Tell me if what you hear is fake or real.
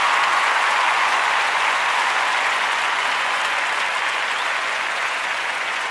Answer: fake